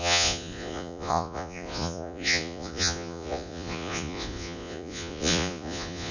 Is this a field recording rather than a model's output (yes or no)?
no